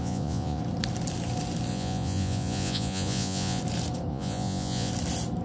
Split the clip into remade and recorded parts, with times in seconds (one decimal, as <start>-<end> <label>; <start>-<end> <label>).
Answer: 0.0-0.6 remade; 0.6-1.7 recorded; 1.7-3.6 remade; 3.6-4.1 recorded; 4.1-4.9 remade; 4.9-5.4 recorded